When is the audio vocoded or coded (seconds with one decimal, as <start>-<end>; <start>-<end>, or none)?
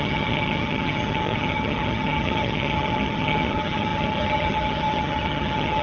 0.0-5.8